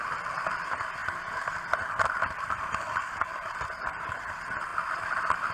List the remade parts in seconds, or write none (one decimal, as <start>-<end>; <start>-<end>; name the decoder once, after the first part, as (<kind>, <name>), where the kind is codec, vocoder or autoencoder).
none